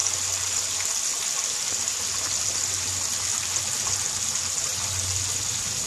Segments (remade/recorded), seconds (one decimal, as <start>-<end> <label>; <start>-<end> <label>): 0.0-5.9 recorded